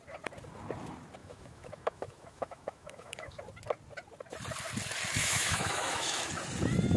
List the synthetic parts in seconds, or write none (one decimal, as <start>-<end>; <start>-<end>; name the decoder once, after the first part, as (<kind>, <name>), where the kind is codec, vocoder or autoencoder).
1.2-3.4 (autoencoder, DAC-VAE); 5.2-6.3